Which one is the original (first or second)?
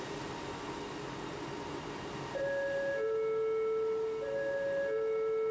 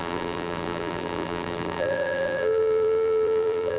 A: first